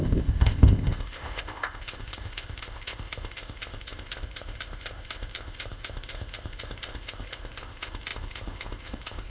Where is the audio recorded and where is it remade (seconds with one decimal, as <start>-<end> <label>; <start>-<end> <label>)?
0.0-9.3 remade